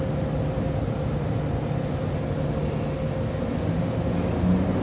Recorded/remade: recorded